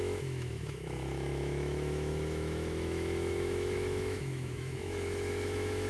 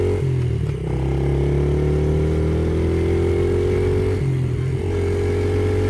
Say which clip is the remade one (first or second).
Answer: first